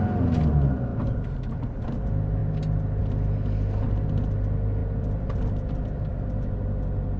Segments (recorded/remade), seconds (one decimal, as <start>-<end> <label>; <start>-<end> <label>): 0.0-0.9 recorded; 0.9-1.9 remade; 1.9-4.8 recorded; 4.8-6.2 remade; 6.2-7.2 recorded